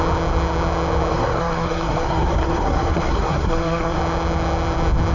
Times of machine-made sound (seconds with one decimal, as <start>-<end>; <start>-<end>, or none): 1.1-4.0

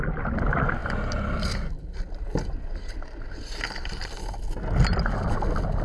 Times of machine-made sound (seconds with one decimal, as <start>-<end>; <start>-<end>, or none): none

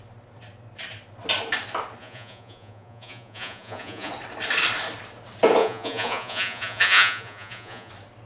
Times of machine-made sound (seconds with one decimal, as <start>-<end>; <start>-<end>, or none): 2.0-4.1; 5.6-7.9

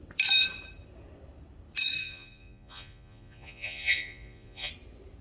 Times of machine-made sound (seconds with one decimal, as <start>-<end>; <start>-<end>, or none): 2.0-4.7